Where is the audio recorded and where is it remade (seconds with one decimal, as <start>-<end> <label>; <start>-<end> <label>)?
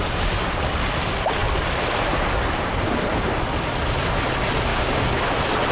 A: 0.0-4.7 recorded; 4.7-5.3 remade; 5.3-5.7 recorded